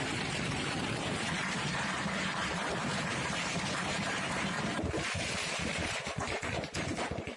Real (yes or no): no